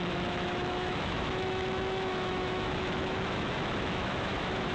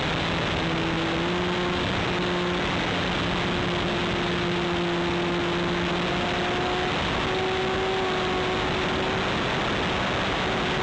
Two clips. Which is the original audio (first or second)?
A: second